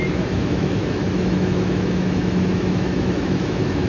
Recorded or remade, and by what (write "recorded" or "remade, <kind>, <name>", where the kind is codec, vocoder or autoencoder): remade, autoencoder, DAC-VAE